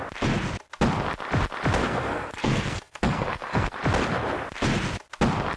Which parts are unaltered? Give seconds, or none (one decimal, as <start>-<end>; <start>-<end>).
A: 0.0-1.8; 3.8-5.6